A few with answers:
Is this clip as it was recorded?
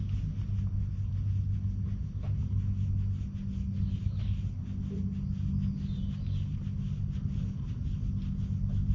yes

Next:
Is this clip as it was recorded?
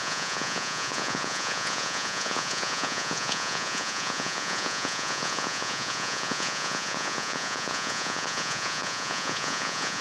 no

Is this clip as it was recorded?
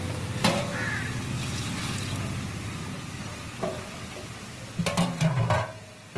yes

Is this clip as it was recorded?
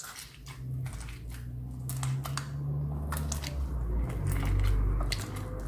yes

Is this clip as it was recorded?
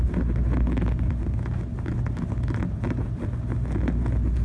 yes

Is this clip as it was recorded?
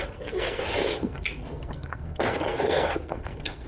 no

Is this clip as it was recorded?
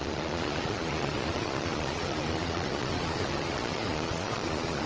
no